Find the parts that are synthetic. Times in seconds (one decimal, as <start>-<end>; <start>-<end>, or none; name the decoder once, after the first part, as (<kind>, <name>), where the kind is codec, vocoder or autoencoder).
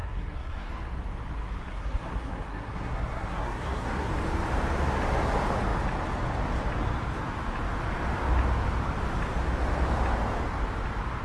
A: 0.0-0.7 (codec, SNAC); 1.7-4.1